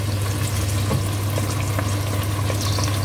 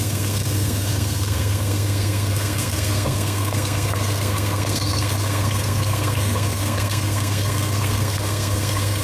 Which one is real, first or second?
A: first